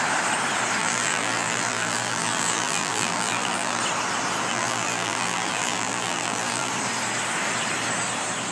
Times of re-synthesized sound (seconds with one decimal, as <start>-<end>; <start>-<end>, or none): 0.8-3.8; 4.5-6.7